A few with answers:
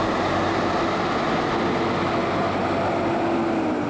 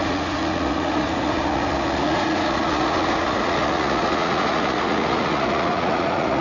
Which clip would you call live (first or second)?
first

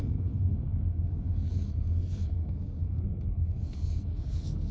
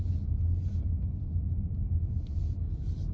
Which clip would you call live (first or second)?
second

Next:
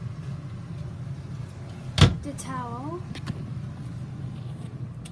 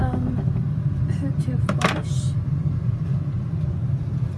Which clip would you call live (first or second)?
first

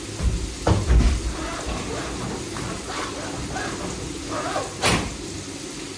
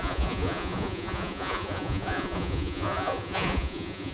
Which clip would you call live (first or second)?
first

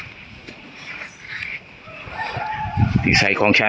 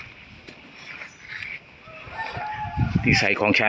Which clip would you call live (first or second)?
second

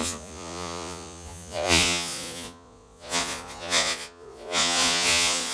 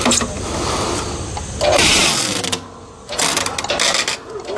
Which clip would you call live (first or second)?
second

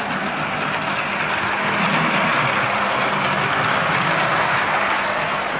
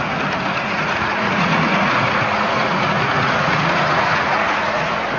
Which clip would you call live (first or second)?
first